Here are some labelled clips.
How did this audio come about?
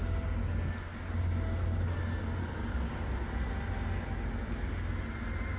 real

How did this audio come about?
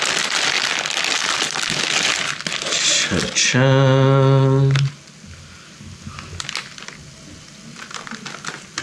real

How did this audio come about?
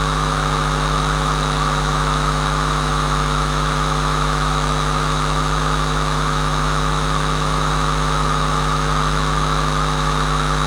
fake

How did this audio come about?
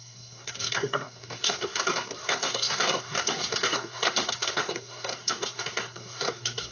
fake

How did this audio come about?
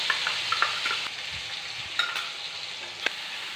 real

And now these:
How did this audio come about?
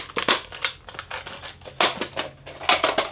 real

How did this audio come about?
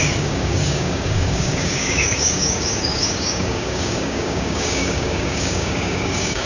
fake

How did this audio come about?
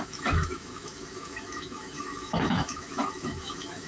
fake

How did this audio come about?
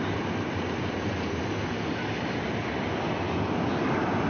fake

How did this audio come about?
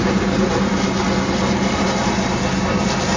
real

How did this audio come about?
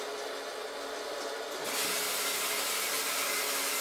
real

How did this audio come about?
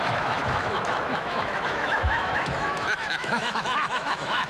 fake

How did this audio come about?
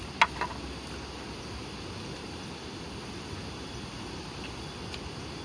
real